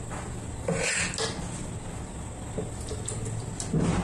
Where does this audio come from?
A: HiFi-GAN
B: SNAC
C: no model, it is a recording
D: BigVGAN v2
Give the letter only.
C